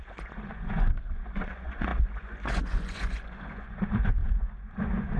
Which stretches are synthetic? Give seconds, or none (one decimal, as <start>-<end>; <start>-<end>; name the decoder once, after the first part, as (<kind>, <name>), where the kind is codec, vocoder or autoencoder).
0.0-5.2 (vocoder, Vocos)